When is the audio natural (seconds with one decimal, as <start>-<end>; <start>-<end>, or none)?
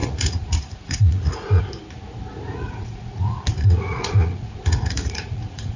1.6-2.5